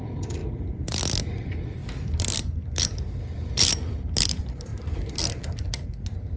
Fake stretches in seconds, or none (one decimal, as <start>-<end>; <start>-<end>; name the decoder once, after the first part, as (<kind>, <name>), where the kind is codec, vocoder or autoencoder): 0.0-0.4 (vocoder, BigVGAN v2); 1.4-6.4